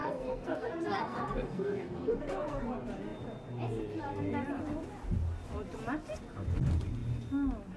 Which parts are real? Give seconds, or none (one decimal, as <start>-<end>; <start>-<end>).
2.6-7.8